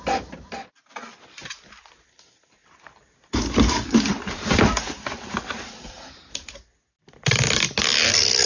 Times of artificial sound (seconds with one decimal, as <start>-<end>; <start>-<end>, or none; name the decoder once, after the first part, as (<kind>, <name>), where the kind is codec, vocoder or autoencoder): none